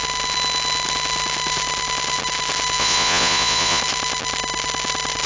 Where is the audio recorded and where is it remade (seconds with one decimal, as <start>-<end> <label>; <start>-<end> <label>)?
0.0-2.8 recorded; 2.8-3.8 remade; 3.8-5.3 recorded